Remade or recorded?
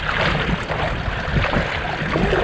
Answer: recorded